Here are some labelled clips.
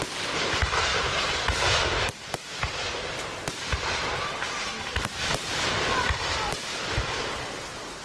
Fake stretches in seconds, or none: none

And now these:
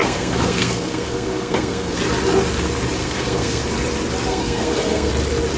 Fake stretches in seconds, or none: 0.0-2.0 (codec, SNAC); 3.0-3.6; 4.3-5.1

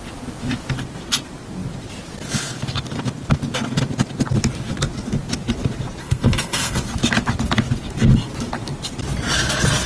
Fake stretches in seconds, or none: 6.0-6.8 (codec, SNAC)